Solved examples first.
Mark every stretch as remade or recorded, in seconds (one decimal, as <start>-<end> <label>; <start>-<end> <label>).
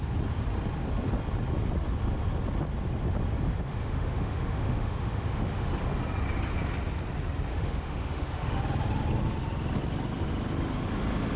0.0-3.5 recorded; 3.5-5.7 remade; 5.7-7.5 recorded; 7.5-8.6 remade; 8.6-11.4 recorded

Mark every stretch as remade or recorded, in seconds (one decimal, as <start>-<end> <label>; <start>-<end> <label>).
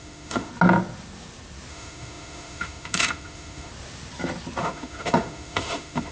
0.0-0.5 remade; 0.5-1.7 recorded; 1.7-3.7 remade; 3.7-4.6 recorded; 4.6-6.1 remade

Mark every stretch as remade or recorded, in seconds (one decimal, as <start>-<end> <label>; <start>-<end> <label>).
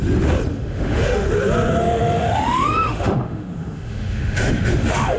0.0-0.5 recorded; 0.5-1.3 remade; 1.3-1.8 recorded; 1.8-5.2 remade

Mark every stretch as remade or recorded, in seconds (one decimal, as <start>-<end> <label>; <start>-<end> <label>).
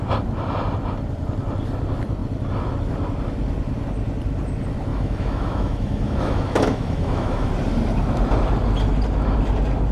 0.0-4.9 recorded; 4.9-7.5 remade; 7.5-9.9 recorded